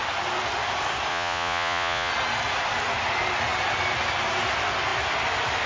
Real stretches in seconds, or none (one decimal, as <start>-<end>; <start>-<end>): 0.0-1.1; 2.1-5.7